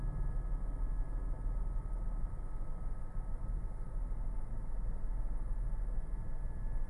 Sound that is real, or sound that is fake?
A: real